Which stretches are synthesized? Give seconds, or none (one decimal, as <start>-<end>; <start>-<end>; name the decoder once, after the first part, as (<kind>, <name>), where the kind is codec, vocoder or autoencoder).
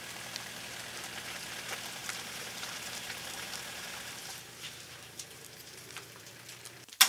2.0-6.3 (vocoder, BigVGAN v2)